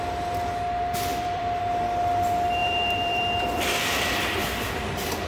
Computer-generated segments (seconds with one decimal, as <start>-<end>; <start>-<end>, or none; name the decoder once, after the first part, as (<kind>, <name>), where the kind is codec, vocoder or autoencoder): 1.1-1.6 (vocoder, BigVGAN v2); 2.6-3.7

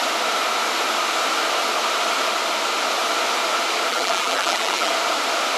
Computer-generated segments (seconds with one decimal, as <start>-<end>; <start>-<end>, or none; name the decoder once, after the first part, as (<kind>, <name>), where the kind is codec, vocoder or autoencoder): 3.9-4.9 (vocoder, BigVGAN v2)

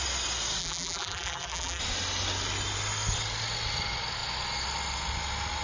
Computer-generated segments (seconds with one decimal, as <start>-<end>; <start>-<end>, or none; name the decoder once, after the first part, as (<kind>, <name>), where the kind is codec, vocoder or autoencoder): 0.6-1.8 (vocoder, BigVGAN v2)

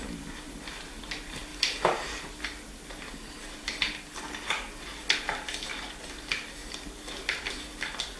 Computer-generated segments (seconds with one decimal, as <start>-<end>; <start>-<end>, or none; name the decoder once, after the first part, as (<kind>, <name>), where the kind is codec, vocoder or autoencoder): 1.5-3.0 (vocoder, BigVGAN v2)

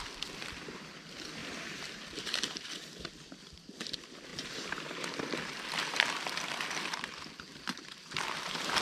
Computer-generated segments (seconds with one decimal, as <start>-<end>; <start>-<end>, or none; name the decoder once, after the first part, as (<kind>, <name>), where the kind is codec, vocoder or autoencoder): 0.0-1.4 (vocoder, BigVGAN v2); 3.4-8.8

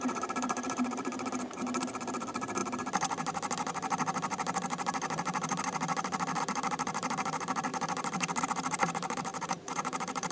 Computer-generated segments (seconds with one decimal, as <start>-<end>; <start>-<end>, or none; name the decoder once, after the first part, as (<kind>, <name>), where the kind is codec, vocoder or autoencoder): 0.0-1.1 (vocoder, BigVGAN v2); 1.8-2.6; 6.4-7.7; 8.4-10.3

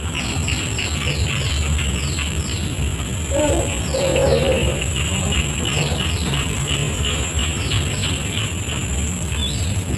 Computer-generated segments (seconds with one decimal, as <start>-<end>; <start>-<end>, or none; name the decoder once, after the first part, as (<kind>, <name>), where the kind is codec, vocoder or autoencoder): 0.0-4.1 (vocoder, BigVGAN v2); 4.8-6.8; 7.7-10.0

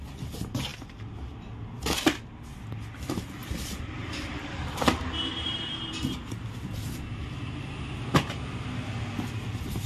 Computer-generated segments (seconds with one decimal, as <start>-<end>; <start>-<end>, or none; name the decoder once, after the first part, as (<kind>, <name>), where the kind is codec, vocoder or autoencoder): 3.4-5.0 (vocoder, BigVGAN v2)